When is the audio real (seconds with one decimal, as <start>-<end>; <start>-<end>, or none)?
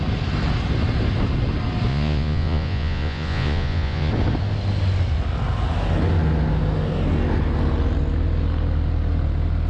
0.0-1.9; 4.1-9.7